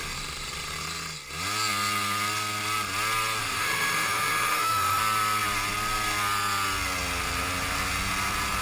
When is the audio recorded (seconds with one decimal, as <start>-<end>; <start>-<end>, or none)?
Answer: 0.0-3.4; 5.0-8.6